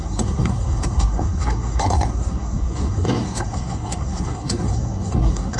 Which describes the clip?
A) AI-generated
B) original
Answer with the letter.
A